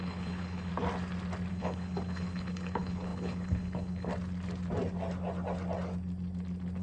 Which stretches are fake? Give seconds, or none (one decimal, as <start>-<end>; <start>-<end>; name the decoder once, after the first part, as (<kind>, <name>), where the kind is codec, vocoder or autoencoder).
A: 0.0-0.7 (codec, HILCodec); 1.5-4.1